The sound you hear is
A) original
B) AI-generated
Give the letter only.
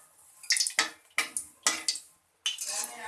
A